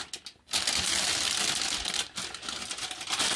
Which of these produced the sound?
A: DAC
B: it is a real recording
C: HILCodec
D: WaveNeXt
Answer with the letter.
B